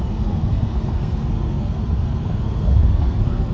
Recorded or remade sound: remade